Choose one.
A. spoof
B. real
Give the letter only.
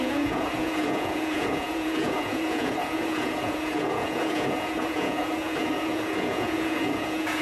A